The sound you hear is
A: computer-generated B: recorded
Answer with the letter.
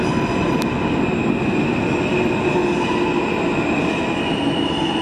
B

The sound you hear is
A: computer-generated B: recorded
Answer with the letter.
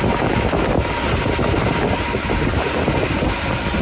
B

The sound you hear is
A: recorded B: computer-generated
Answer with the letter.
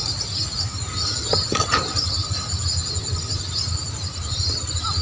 A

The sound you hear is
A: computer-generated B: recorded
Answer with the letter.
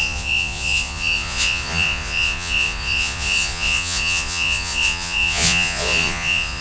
A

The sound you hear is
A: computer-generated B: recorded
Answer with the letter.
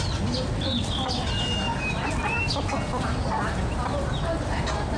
B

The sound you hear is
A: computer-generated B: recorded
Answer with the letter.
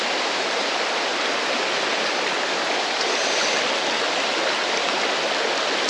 B